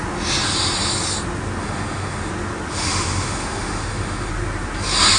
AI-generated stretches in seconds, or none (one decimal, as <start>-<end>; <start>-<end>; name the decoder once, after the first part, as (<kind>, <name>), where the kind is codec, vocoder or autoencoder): 1.6-2.3 (autoencoder, DAC-VAE); 2.7-4.3